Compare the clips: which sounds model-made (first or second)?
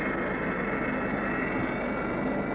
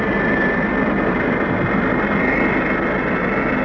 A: second